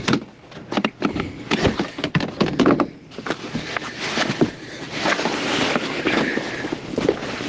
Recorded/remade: recorded